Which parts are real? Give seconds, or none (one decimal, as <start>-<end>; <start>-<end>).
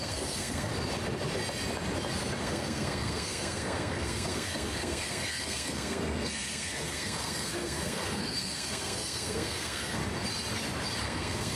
0.7-2.4; 10.0-11.0